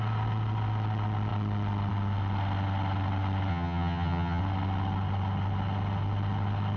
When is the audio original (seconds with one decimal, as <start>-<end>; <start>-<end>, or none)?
0.0-3.5; 4.4-6.8